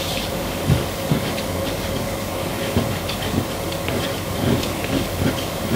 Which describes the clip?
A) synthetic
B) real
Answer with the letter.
A